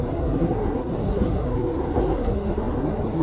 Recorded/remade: remade